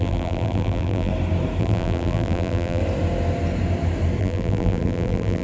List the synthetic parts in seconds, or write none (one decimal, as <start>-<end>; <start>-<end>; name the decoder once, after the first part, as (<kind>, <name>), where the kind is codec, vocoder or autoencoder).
0.0-1.1 (vocoder, BigVGAN v2); 1.6-2.8; 4.2-5.4